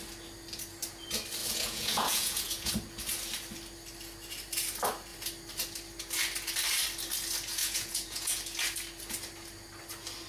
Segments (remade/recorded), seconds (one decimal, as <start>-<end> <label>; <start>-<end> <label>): 0.0-1.4 recorded; 1.4-2.7 remade; 2.7-7.6 recorded; 7.6-8.4 remade; 8.4-10.3 recorded